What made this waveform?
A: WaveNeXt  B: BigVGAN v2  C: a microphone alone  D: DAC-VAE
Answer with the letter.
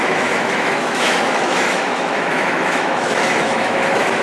D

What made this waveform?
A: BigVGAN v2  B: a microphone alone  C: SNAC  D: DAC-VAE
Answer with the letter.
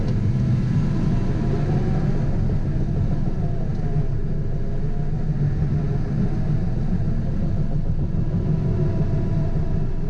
B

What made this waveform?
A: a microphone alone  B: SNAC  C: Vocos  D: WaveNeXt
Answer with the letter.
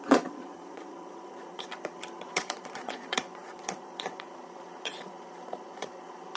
C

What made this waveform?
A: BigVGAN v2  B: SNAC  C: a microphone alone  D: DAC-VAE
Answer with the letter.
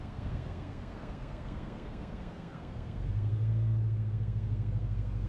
B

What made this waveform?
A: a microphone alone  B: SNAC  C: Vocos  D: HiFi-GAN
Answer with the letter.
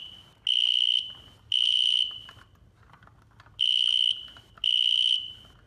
A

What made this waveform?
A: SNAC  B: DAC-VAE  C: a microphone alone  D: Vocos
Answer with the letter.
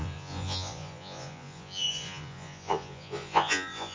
D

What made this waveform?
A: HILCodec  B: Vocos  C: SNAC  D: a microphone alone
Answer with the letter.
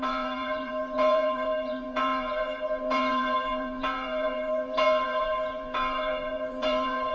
B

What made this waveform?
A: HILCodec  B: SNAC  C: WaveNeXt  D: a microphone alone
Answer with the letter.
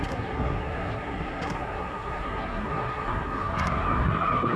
B